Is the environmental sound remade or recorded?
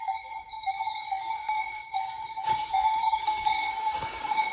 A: remade